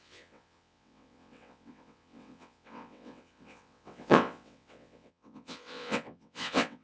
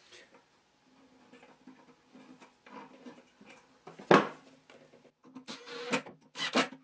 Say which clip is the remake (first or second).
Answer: first